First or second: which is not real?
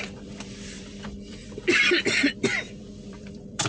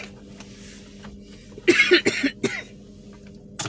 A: first